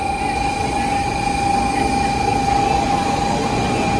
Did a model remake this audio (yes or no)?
no